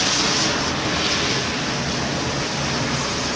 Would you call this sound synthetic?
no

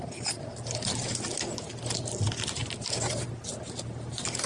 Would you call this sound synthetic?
no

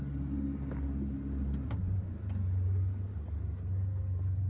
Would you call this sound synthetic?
no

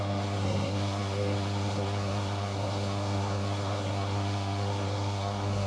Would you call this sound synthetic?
yes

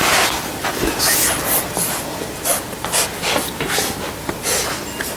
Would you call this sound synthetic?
no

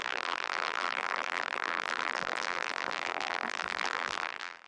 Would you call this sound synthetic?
yes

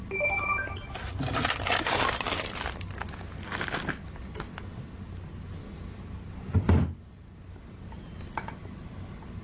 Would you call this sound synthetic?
no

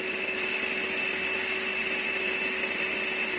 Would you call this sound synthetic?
no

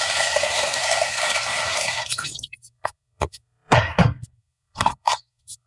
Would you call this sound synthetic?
yes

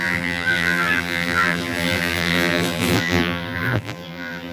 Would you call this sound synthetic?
yes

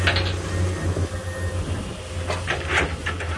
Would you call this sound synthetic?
no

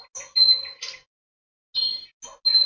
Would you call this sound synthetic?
no